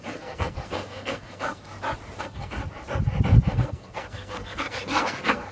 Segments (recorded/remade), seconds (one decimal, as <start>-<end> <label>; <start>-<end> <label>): 0.0-1.7 remade; 1.7-2.2 recorded; 2.2-2.6 remade; 2.6-3.5 recorded; 3.5-5.5 remade